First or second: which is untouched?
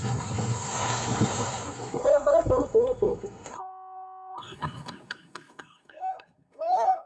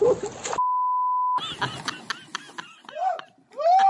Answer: second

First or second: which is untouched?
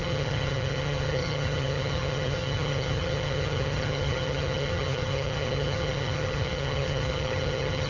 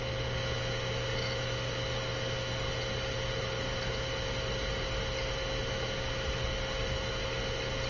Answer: second